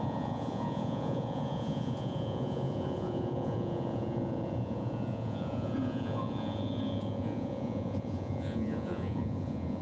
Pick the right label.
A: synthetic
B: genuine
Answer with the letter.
A